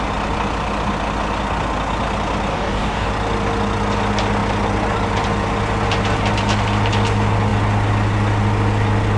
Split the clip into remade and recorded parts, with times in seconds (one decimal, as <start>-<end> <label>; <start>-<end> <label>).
0.0-2.5 recorded; 2.5-3.1 remade; 3.1-9.2 recorded